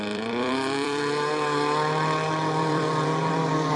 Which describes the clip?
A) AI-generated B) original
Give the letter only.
A